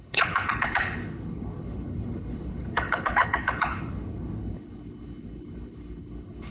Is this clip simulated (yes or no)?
yes